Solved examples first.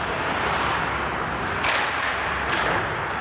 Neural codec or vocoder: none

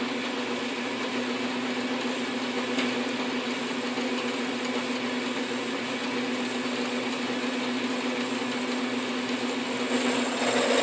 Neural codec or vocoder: none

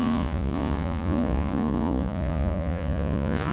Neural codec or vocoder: vocoder, Vocos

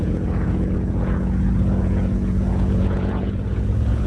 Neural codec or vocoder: vocoder, Vocos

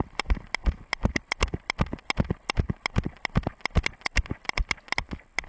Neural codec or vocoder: none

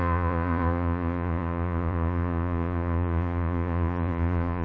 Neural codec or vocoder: vocoder, Vocos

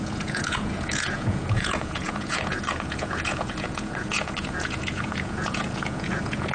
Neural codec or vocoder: vocoder, Vocos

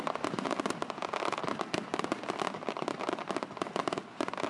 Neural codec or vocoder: none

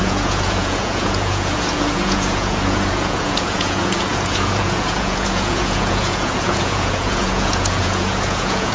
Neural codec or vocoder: vocoder, Vocos